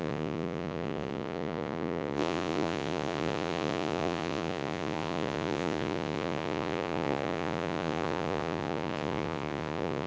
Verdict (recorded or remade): remade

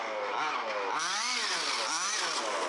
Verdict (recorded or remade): recorded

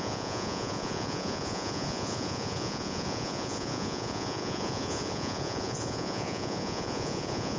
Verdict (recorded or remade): remade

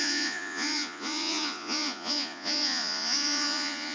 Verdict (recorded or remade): remade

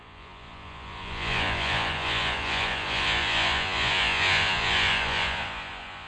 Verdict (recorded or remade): remade